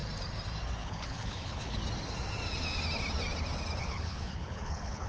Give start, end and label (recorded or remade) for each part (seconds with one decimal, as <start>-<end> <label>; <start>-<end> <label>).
0.0-0.8 recorded; 0.8-1.8 remade; 1.8-3.8 recorded; 3.8-5.1 remade